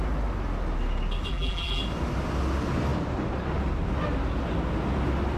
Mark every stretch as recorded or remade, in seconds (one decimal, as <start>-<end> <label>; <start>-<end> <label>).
0.0-1.3 recorded; 1.3-1.8 remade; 1.8-5.4 recorded